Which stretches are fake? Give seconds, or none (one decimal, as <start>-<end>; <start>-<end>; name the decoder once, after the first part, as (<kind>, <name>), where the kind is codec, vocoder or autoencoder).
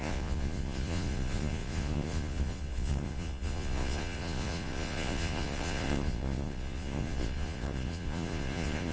0.0-8.9 (vocoder, Vocos)